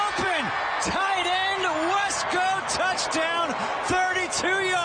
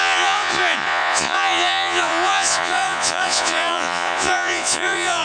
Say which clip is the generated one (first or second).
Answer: second